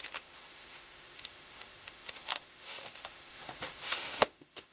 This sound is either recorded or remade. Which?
remade